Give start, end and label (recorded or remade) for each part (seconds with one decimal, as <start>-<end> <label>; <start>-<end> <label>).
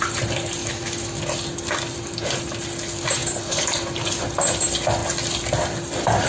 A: 0.0-0.6 recorded; 0.6-1.2 remade; 1.2-6.3 recorded